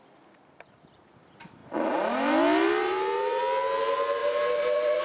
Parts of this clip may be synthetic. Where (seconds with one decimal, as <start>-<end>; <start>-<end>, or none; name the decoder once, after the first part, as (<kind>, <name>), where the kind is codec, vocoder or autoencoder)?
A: 1.6-3.4 (vocoder, BigVGAN v2); 4.2-5.0